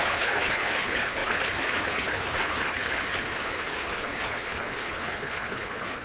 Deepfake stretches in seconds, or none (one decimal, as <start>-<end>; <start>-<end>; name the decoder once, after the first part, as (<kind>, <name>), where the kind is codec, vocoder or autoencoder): 0.0-6.0 (codec, HILCodec)